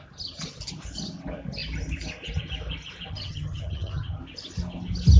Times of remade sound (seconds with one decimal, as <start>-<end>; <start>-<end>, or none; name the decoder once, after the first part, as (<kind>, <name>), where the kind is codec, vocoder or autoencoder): 3.1-4.2 (vocoder, HiFi-GAN)